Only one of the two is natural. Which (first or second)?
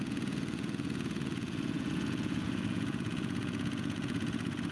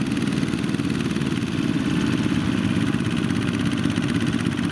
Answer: second